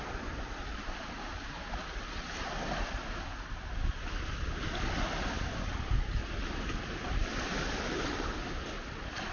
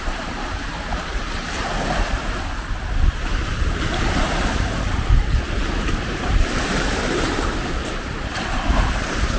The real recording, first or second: first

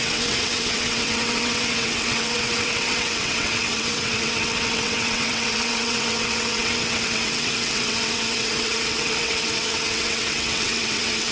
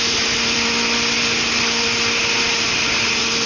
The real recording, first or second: second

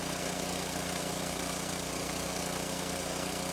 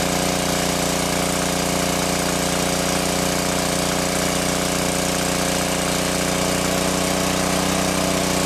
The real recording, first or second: second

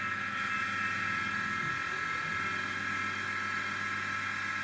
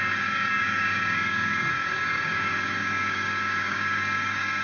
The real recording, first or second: first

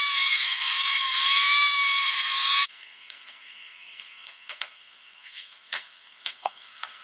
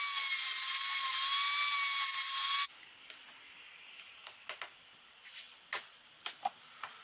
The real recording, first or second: second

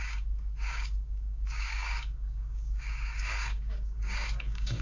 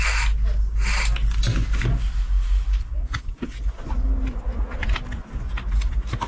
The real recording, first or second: second